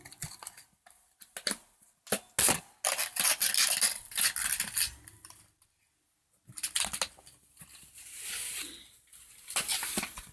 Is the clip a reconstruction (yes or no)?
no